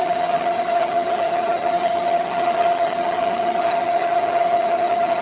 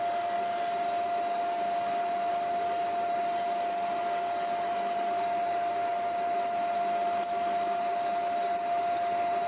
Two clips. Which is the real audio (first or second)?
second